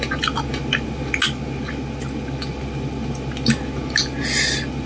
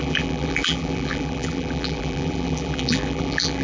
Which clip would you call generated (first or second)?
second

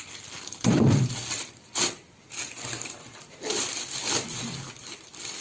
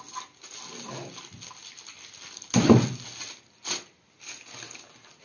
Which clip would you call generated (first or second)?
first